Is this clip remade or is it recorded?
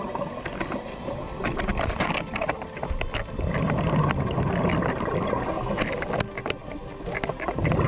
recorded